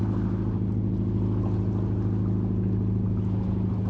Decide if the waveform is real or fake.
real